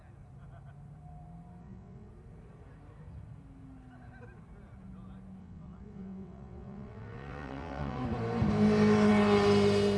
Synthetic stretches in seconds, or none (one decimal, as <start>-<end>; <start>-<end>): 1.6-2.1; 5.4-8.0